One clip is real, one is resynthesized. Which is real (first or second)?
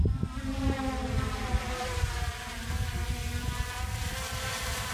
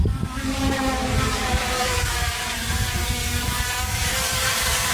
first